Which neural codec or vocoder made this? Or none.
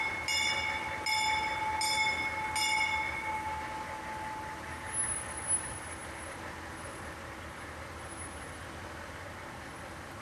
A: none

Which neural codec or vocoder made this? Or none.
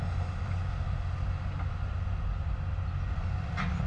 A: none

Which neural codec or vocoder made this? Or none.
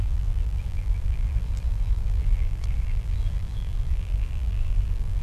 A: vocoder, BigVGAN v2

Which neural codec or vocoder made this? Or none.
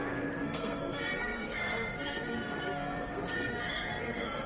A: codec, SNAC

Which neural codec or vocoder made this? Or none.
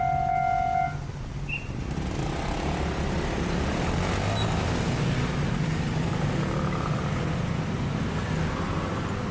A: none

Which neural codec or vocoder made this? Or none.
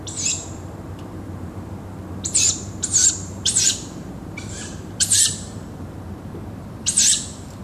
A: vocoder, BigVGAN v2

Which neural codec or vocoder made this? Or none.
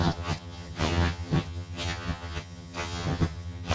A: vocoder, HiFi-GAN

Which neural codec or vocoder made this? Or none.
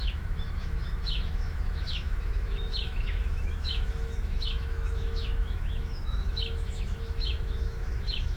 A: autoencoder, DAC-VAE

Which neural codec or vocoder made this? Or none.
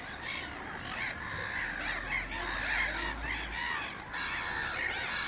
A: none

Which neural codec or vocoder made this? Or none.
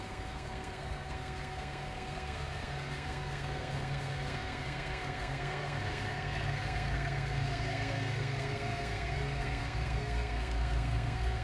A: codec, SNAC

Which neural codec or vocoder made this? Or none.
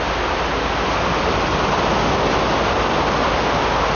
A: none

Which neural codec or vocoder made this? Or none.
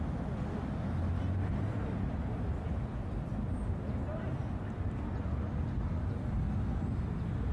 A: none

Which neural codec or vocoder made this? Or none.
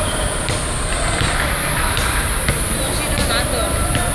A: none